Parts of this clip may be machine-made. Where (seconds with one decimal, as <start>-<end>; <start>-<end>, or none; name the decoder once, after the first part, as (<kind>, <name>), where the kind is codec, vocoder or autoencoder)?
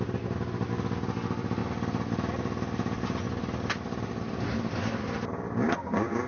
none